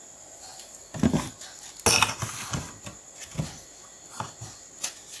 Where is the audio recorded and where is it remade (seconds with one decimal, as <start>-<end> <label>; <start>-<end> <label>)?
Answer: 0.0-5.2 recorded